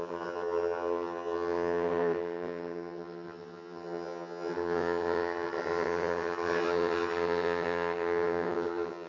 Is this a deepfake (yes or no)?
yes